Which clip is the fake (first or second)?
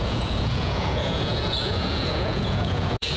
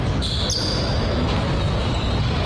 first